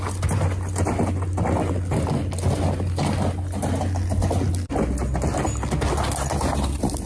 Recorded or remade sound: recorded